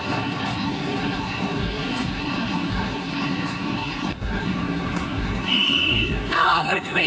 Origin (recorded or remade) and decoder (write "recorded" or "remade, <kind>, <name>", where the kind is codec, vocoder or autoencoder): remade, codec, SNAC